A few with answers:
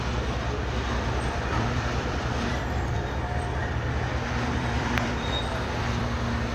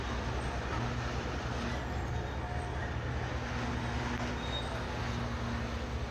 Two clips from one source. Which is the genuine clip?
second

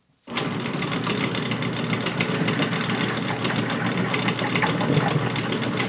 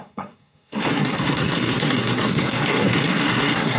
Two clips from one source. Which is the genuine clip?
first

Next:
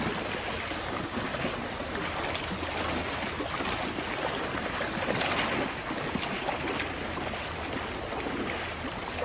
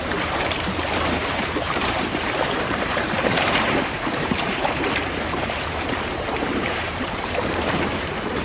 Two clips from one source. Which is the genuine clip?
first